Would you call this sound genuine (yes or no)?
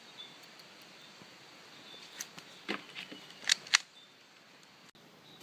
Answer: yes